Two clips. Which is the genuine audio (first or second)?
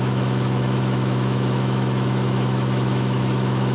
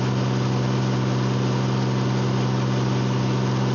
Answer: second